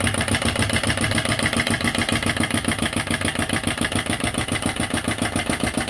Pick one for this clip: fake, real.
real